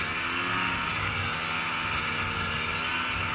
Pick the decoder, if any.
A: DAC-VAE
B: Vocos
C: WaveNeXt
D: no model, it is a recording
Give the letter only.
D